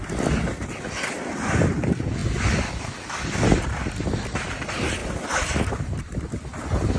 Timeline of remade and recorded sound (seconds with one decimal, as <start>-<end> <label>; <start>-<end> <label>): 0.0-5.0 recorded; 5.0-7.0 remade